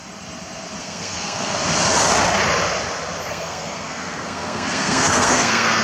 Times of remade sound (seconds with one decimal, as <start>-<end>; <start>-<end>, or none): 0.8-1.6; 3.3-5.8